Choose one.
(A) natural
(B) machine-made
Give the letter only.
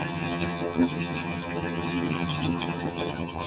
B